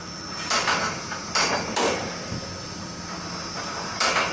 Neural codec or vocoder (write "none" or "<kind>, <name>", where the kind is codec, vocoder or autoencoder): none